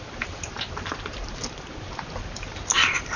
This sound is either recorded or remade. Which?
recorded